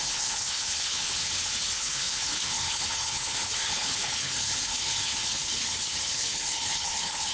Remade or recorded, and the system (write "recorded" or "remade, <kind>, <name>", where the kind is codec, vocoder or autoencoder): remade, codec, HILCodec